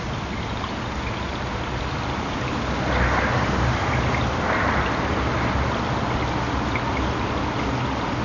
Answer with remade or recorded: recorded